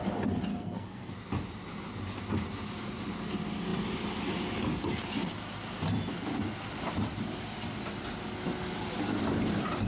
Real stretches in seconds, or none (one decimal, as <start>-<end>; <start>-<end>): 0.0-0.5; 1.1-9.9